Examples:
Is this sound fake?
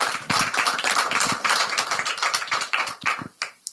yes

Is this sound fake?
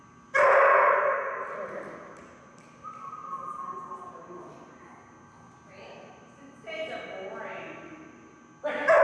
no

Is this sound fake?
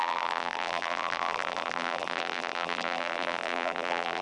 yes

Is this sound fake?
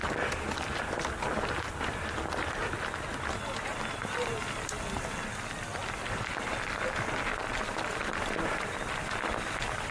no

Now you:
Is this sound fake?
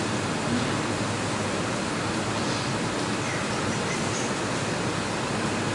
no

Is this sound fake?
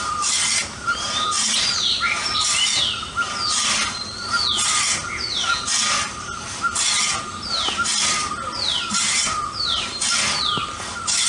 no